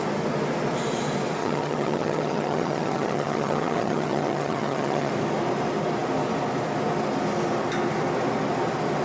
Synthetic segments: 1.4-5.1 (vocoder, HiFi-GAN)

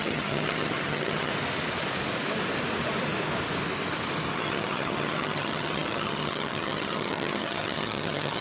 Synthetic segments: 0.0-1.3 (vocoder, HiFi-GAN); 4.3-8.4